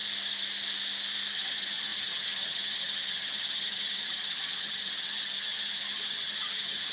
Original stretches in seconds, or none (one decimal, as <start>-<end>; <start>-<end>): 0.0-1.3